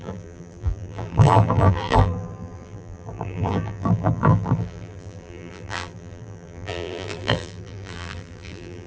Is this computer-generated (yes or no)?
yes